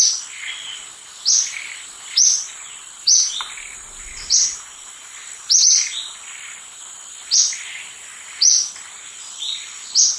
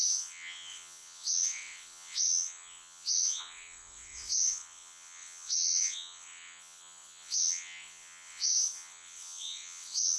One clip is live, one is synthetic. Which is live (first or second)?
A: first